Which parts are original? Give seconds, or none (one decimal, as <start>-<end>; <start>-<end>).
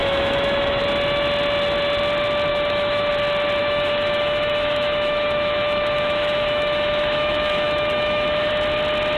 0.8-2.5; 3.1-3.6; 8.5-9.2